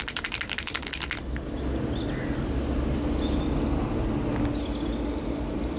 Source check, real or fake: real